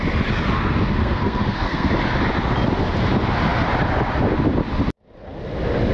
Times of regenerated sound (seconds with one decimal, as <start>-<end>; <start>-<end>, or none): 1.0-1.9